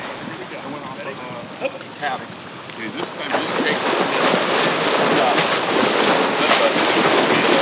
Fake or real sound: real